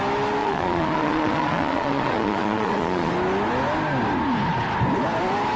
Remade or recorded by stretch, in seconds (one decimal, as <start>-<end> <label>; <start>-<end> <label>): 0.0-0.4 recorded; 0.4-3.1 remade; 3.1-5.6 recorded